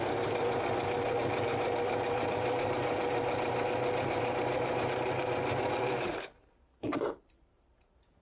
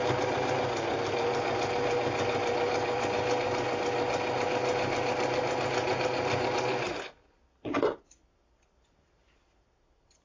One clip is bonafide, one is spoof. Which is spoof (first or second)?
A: first